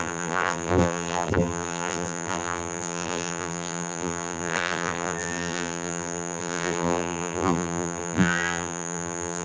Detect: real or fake fake